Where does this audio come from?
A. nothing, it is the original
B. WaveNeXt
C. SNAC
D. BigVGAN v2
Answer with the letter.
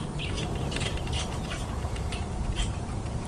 D